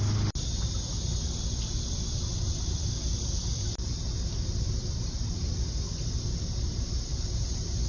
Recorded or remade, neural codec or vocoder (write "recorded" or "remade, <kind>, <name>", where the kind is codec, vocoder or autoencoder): recorded